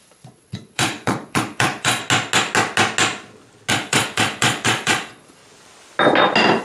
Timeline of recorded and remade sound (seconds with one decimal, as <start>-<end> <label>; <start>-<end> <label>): 0.0-2.0 remade; 2.0-3.7 recorded; 3.7-5.4 remade; 5.4-6.6 recorded